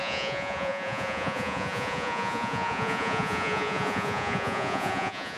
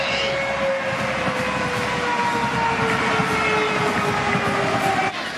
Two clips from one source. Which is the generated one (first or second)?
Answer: first